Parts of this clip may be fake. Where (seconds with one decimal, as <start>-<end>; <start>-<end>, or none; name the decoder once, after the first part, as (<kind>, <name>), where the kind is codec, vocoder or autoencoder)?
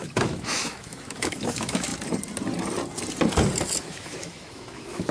0.0-1.9 (autoencoder, DAC-VAE); 3.8-5.1